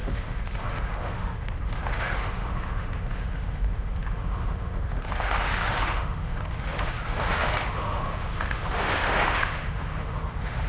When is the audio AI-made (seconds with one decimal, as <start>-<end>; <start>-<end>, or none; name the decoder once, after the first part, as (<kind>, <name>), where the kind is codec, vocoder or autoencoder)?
0.0-10.7 (autoencoder, DAC-VAE)